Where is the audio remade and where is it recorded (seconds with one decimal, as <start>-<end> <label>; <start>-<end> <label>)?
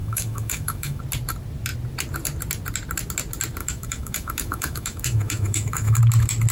0.0-1.0 remade; 1.0-3.6 recorded; 3.6-6.0 remade; 6.0-6.5 recorded